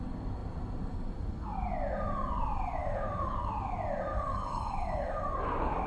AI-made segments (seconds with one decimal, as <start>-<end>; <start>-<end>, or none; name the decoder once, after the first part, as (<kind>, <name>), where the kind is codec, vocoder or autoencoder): 2.8-3.5 (codec, DAC); 4.1-5.9